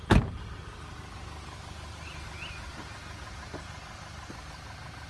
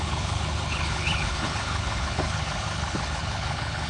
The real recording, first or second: first